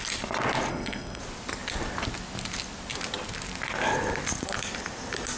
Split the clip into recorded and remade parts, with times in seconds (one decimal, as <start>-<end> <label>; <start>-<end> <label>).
0.0-0.7 recorded; 0.7-1.2 remade; 1.2-5.4 recorded